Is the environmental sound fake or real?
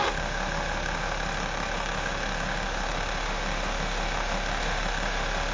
fake